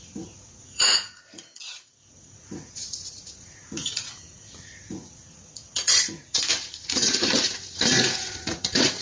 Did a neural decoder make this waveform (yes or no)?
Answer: yes